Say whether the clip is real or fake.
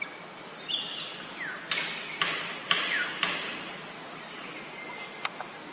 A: real